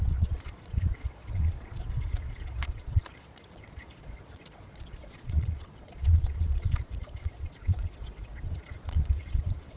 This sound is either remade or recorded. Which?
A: remade